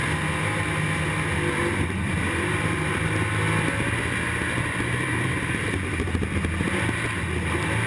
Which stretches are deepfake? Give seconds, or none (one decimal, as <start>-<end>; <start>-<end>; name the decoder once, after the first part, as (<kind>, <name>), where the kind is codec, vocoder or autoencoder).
1.6-5.9 (vocoder, BigVGAN v2)